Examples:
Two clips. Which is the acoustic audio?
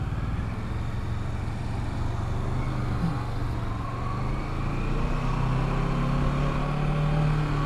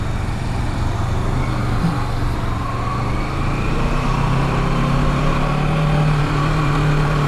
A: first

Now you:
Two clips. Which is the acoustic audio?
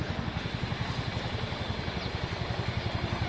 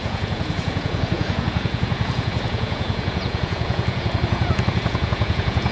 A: first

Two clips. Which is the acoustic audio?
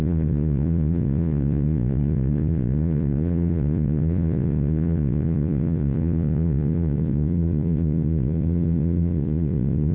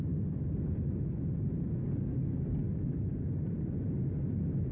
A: second